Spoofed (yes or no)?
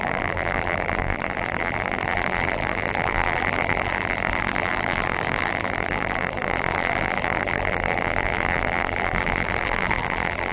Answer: yes